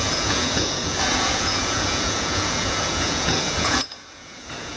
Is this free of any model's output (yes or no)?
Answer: no